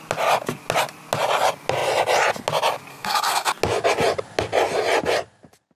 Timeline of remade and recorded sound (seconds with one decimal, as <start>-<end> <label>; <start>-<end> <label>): 0.0-2.9 recorded; 2.9-3.5 remade; 3.5-5.8 recorded